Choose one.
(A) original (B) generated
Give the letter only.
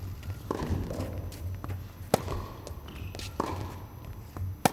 A